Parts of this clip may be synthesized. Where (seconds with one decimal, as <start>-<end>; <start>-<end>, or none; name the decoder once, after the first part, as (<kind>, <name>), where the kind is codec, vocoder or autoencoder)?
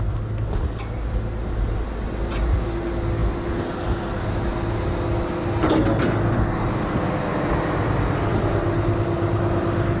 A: none